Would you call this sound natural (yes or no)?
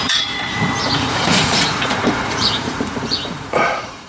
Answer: no